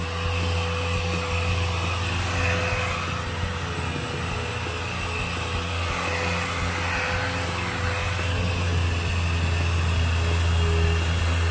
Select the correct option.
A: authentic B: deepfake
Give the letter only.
A